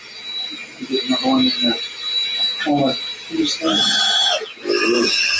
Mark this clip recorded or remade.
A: recorded